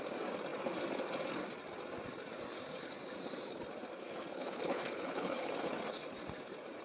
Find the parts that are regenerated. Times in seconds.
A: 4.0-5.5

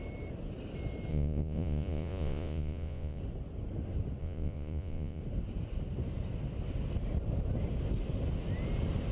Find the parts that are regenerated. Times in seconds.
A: 1.1-3.2; 4.2-5.2

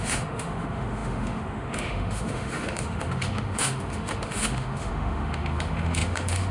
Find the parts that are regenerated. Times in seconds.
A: 0.0-6.5

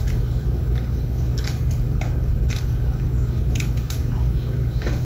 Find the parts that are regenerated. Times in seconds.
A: 0.0-5.0

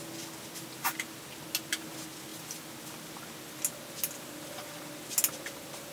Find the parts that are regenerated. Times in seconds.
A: none